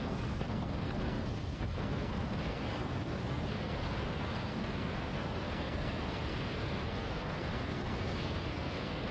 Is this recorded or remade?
remade